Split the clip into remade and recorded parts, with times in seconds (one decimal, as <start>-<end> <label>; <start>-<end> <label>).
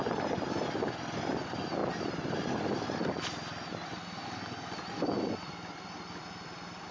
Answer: 0.0-6.9 recorded